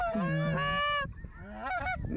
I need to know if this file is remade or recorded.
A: recorded